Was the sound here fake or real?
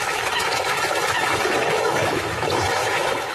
fake